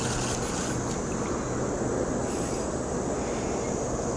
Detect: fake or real real